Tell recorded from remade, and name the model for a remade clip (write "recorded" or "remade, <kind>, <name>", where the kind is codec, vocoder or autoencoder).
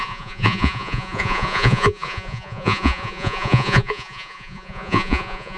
remade, vocoder, Vocos